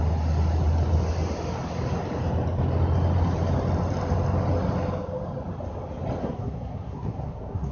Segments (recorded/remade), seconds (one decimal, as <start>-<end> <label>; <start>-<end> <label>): 0.0-6.2 recorded; 6.2-7.7 remade